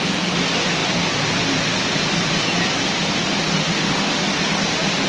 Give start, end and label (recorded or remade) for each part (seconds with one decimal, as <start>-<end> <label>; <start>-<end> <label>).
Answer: 0.0-3.6 recorded; 3.6-4.1 remade; 4.1-5.1 recorded